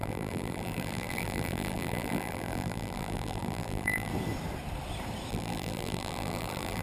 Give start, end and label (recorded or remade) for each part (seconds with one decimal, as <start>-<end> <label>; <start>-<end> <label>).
0.0-4.1 remade; 4.1-5.3 recorded; 5.3-6.8 remade